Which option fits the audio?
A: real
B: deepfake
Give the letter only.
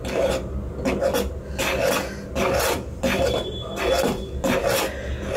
A